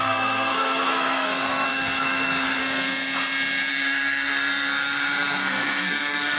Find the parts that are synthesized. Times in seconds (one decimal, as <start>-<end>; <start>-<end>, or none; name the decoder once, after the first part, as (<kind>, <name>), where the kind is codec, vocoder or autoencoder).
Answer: 0.0-2.6 (codec, SNAC); 3.7-6.4